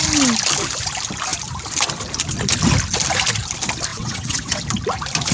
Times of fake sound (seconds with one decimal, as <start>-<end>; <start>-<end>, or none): 3.9-4.6